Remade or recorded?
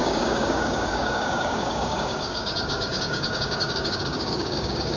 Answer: remade